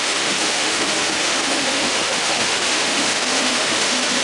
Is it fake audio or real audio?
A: fake